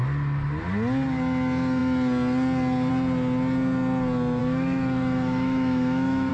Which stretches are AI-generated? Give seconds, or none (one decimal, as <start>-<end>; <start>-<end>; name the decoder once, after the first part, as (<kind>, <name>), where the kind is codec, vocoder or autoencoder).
4.4-6.3 (autoencoder, DAC-VAE)